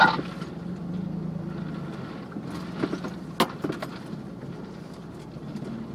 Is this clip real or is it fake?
real